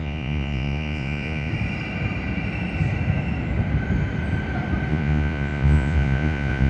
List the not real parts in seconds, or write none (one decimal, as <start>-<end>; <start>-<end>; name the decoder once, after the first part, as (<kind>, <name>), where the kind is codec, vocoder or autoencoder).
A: 0.0-1.5 (vocoder, Vocos); 4.9-6.7